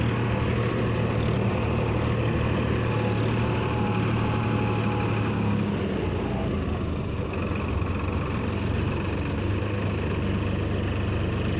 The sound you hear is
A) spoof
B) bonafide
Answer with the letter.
B